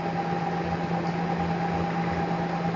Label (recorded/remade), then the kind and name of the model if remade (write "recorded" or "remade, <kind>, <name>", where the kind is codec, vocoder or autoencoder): recorded